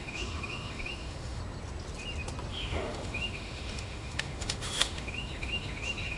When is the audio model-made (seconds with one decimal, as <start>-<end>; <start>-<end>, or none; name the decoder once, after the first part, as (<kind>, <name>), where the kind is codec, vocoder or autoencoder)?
0.0-1.4 (autoencoder, DAC-VAE); 2.5-6.2